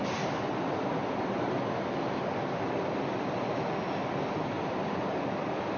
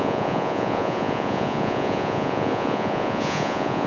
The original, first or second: first